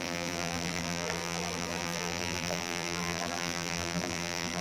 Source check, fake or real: fake